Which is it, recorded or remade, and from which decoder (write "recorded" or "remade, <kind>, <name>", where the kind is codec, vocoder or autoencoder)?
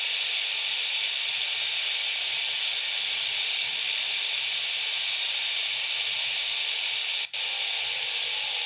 recorded